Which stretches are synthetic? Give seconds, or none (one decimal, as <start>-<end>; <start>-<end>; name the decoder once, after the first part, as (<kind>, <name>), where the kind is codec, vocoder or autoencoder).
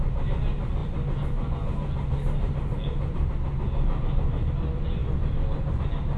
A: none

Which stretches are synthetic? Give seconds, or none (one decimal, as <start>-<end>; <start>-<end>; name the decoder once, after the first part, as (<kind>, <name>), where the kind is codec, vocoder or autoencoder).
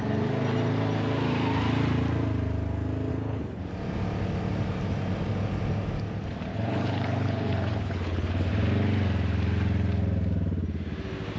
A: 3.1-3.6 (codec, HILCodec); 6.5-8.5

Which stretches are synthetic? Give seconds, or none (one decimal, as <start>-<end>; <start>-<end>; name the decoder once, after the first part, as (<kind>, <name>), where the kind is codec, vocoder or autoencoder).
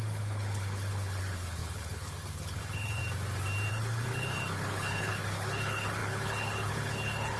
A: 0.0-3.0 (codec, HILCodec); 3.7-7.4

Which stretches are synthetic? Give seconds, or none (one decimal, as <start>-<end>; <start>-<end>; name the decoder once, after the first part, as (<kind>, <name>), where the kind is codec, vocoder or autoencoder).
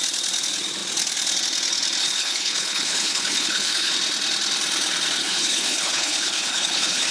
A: 2.0-3.9 (codec, HILCodec); 5.2-7.1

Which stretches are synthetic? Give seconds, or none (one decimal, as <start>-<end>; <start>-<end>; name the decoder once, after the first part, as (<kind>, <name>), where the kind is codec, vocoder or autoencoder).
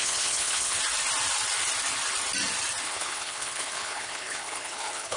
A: 0.0-0.8 (codec, HILCodec); 2.8-5.2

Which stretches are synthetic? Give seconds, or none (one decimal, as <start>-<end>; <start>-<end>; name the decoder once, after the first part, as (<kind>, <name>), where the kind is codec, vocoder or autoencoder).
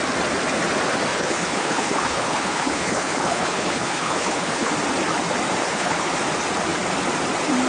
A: 1.1-4.7 (codec, HILCodec); 5.6-6.1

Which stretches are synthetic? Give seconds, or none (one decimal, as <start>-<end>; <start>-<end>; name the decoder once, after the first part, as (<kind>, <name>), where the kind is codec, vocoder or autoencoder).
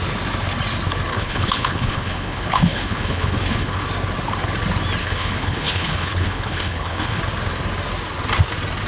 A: 1.1-3.8 (codec, HILCodec); 5.0-7.2